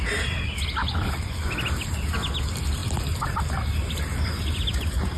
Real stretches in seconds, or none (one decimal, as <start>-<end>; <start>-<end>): 0.0-0.8; 1.5-5.2